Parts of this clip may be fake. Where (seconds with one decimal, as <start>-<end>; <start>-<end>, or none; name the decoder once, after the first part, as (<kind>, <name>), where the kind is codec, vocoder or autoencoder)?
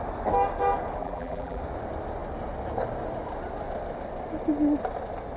1.0-1.6 (vocoder, BigVGAN v2)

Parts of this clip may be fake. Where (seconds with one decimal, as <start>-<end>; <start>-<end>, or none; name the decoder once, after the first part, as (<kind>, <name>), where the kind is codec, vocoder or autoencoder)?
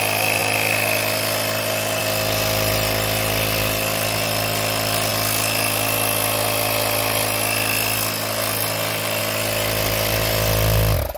none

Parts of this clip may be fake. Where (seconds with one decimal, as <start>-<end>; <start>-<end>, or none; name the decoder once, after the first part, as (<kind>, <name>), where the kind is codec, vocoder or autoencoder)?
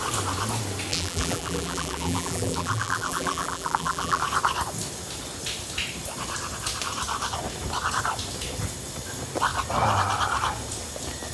0.9-4.2 (vocoder, BigVGAN v2)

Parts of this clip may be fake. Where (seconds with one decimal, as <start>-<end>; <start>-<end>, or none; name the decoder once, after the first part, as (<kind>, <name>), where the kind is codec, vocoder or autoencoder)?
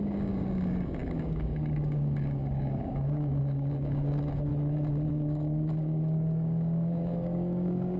0.0-4.5 (codec, DAC); 5.1-8.0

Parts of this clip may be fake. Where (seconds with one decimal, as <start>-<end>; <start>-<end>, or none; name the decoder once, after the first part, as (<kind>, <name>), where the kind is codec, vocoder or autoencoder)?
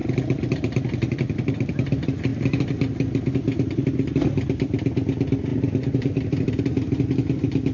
0.0-1.7 (vocoder, BigVGAN v2); 5.5-6.6